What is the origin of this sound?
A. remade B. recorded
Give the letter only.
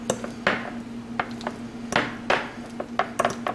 B